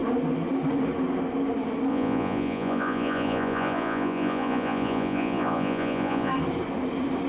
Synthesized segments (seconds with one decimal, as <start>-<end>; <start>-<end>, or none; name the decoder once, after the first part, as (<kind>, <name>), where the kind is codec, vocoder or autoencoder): 1.9-6.3 (vocoder, Vocos)